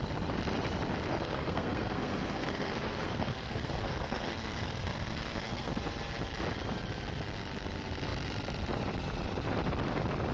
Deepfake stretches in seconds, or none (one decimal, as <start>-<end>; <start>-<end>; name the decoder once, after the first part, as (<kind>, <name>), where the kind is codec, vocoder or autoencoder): 1.1-5.7 (codec, SNAC)